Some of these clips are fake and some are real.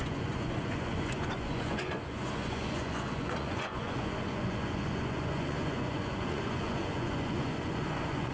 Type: fake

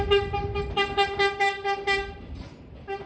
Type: real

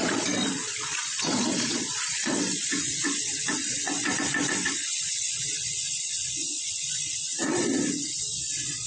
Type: fake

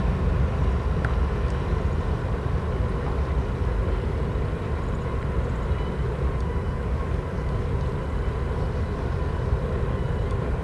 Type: real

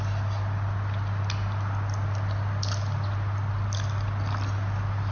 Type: real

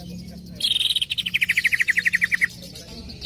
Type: real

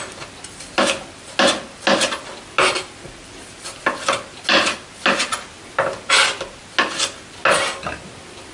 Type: real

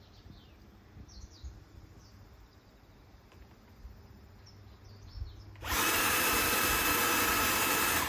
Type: real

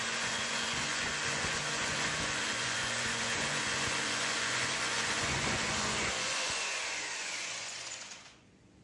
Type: fake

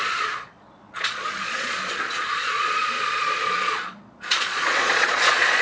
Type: fake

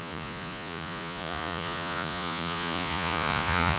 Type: fake